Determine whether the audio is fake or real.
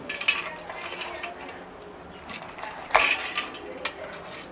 real